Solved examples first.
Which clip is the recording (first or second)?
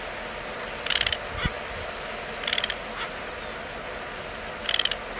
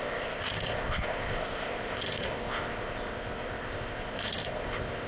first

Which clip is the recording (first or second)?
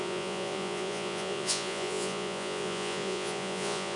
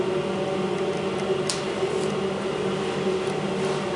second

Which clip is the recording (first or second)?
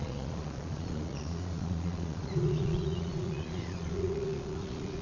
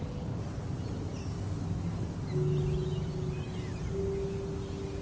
second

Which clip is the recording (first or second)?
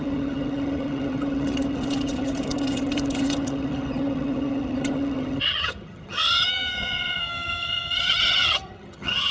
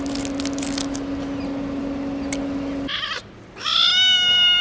second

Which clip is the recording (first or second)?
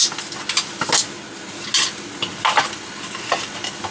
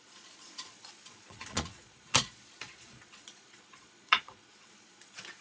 first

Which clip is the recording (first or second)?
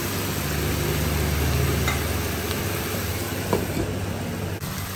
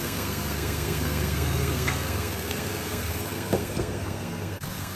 first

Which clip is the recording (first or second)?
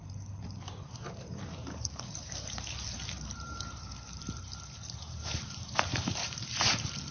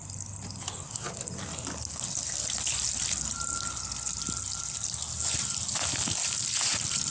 second